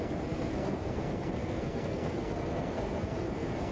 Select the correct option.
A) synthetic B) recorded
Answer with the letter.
A